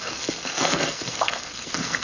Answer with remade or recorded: remade